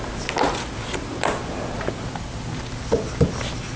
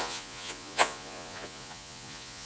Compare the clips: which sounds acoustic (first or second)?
first